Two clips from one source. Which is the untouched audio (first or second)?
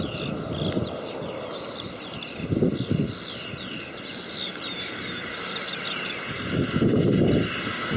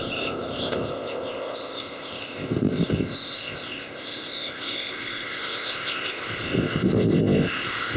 first